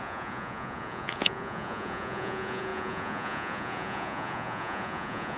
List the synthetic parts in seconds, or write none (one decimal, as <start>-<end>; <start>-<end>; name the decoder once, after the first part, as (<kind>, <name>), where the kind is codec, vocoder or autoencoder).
0.0-5.4 (vocoder, Vocos)